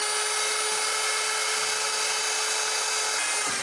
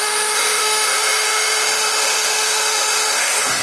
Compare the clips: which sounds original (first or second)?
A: first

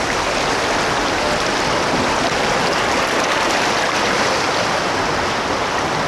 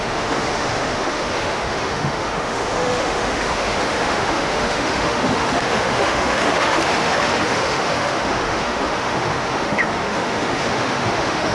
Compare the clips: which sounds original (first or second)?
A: first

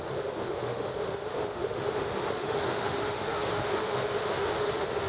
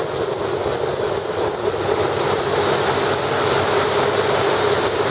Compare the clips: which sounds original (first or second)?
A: second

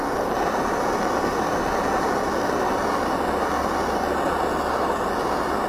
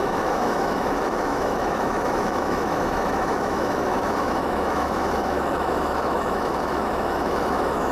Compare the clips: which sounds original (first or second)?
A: first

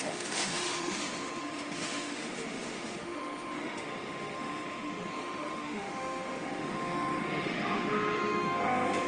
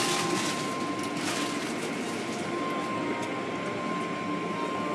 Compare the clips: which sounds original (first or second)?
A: second